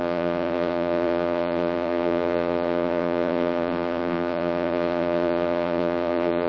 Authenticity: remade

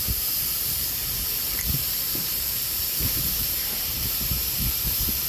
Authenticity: remade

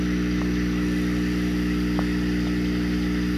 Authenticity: recorded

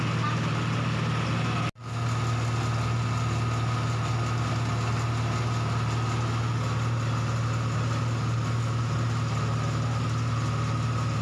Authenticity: recorded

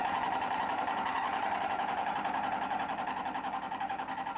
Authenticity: remade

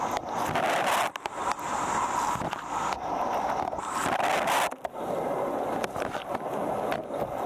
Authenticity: recorded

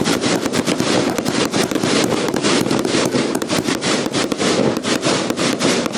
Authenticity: remade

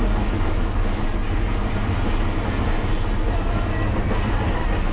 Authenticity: recorded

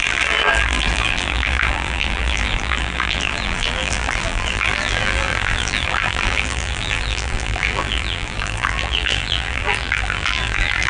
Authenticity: remade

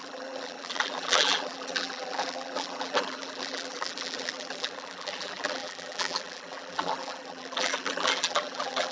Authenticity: remade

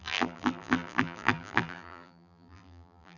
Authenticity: remade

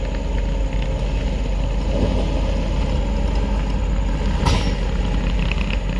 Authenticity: recorded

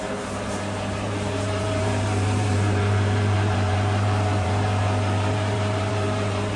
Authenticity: remade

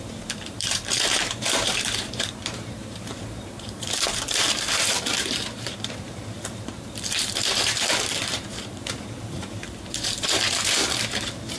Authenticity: remade